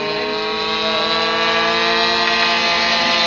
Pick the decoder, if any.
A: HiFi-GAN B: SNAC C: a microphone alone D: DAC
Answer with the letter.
C